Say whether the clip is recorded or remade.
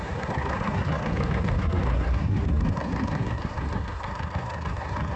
remade